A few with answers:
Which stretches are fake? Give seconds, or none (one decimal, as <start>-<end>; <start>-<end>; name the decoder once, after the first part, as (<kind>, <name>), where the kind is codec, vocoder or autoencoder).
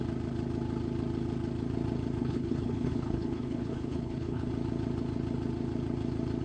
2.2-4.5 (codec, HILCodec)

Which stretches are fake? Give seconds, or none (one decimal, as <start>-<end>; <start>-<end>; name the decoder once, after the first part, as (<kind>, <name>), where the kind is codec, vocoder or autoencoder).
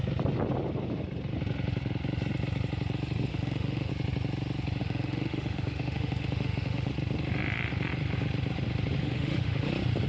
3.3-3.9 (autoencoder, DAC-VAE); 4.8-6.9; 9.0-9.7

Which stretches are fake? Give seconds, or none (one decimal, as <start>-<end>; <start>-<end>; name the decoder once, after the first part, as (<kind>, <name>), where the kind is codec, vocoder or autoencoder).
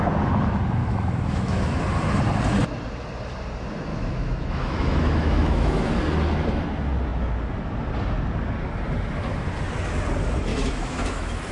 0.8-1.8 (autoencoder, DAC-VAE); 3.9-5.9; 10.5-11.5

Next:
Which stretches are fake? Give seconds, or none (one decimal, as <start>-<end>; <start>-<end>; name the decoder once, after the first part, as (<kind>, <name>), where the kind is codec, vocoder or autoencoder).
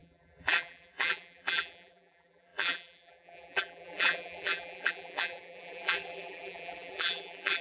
0.0-7.6 (vocoder, BigVGAN v2)